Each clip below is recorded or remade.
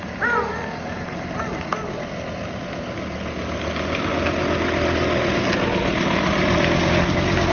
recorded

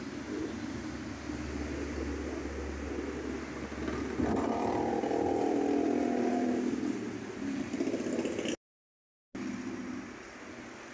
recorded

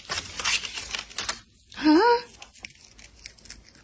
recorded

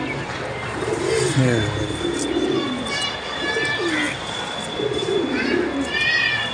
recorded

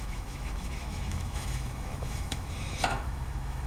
remade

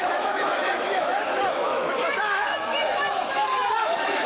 remade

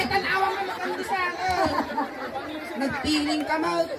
recorded